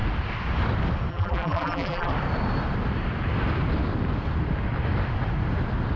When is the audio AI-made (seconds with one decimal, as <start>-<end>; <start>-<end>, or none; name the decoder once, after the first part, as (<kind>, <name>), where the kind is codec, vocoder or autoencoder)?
1.1-2.1 (vocoder, BigVGAN v2)